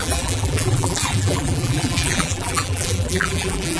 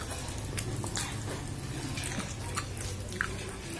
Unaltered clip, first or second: second